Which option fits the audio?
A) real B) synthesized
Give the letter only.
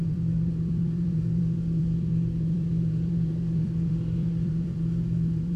B